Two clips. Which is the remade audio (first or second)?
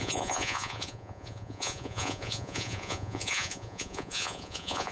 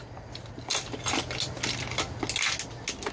first